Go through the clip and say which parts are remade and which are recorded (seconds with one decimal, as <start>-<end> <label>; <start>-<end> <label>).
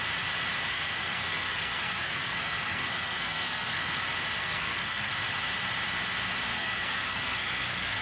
0.0-0.7 recorded; 0.7-4.0 remade; 4.0-4.4 recorded; 4.4-5.1 remade; 5.1-6.5 recorded; 6.5-8.0 remade